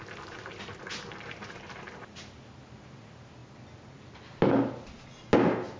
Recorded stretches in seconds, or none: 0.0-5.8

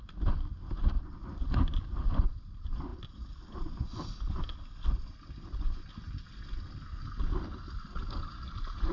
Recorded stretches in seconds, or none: 0.0-2.9; 5.9-8.9

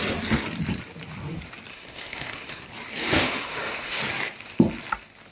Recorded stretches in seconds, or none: 0.0-1.7; 2.6-3.0; 4.0-5.3

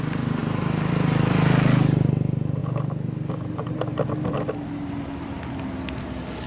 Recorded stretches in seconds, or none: 0.0-6.5

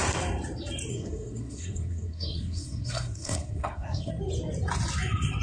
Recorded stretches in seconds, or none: 0.0-0.9; 4.1-5.4